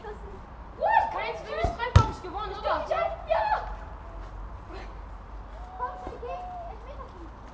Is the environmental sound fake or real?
real